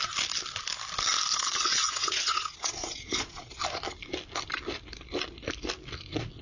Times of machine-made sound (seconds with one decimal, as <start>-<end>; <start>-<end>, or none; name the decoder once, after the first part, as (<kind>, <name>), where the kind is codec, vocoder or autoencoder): 1.3-3.6 (vocoder, Vocos)